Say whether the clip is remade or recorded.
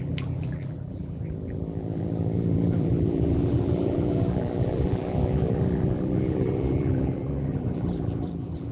remade